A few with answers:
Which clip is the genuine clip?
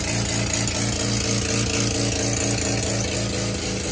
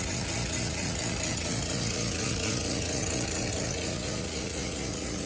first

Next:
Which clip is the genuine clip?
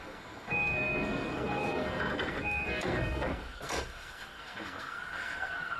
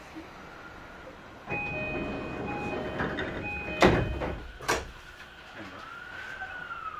second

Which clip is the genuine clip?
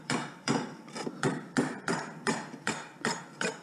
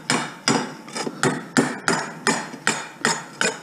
second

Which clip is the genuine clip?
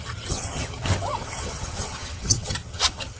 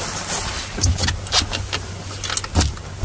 second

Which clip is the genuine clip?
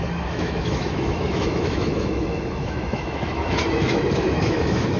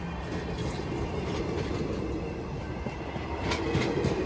second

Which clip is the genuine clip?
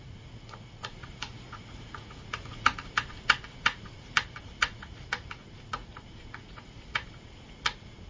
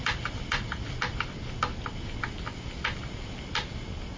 second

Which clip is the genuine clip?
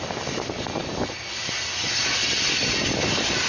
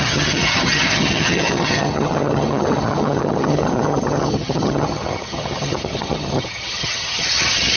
first